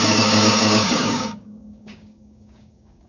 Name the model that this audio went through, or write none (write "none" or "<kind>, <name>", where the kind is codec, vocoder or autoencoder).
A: codec, DAC